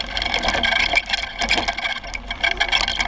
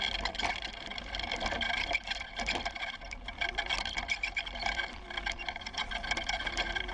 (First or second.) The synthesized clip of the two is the second